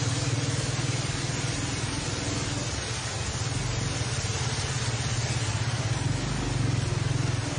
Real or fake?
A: real